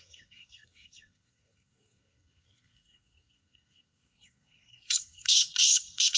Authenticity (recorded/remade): remade